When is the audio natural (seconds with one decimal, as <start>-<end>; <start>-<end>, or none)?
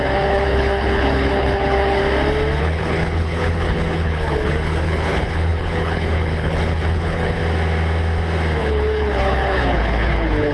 2.0-2.6; 7.4-8.6